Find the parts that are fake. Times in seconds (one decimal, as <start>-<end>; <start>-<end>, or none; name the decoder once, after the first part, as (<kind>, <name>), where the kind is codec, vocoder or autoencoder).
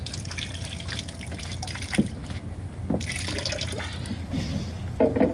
none